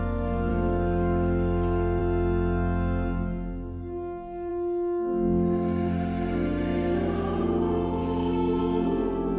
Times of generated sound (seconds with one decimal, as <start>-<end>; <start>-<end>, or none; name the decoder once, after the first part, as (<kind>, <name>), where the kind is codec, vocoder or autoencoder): 0.5-2.0 (autoencoder, DAC-VAE); 8.0-8.6

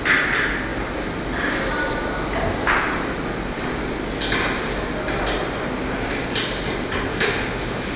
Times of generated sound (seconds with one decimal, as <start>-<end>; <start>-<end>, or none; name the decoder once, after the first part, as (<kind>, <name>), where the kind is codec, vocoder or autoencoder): 7.1-8.0 (autoencoder, DAC-VAE)

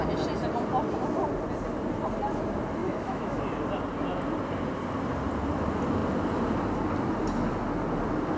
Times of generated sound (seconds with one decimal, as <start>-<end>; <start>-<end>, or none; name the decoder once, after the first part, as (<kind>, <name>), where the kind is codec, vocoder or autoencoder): 2.8-3.4 (autoencoder, DAC-VAE)